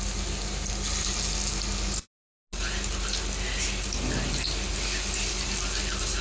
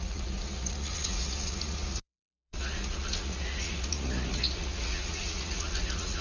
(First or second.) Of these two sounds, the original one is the first